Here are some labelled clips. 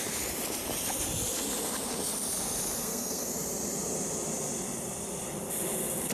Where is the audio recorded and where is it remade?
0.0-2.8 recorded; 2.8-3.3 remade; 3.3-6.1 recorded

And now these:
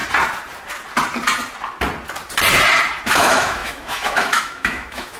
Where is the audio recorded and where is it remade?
0.0-3.1 recorded; 3.1-5.2 remade